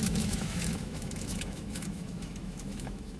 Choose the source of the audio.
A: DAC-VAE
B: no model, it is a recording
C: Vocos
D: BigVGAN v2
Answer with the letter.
A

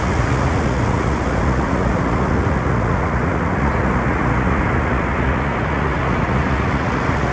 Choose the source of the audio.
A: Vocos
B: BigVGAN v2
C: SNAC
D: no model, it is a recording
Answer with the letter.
A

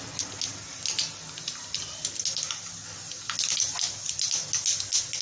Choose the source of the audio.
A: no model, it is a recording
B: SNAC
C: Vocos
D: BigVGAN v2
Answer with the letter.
A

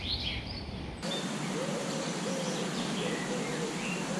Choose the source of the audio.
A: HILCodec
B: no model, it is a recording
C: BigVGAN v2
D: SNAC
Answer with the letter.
B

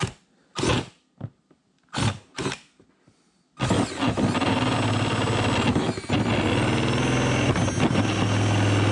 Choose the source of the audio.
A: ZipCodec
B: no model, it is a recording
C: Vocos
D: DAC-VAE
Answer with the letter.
B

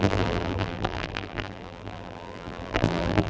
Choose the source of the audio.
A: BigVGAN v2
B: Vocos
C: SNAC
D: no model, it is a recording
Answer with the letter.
A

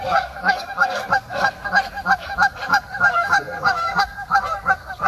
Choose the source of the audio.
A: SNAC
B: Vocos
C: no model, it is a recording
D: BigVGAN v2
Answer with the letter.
A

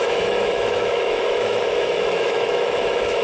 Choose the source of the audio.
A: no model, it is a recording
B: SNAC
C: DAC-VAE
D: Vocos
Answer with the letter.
C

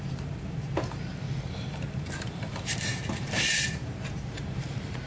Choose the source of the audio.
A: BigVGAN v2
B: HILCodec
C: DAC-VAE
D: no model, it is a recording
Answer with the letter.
A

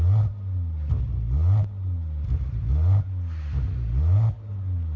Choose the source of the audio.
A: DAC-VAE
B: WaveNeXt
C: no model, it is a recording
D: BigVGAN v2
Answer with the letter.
C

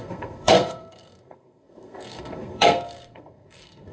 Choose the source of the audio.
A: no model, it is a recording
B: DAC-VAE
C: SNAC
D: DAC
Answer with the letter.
C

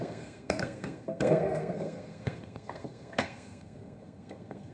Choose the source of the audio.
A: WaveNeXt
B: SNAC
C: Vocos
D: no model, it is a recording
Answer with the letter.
B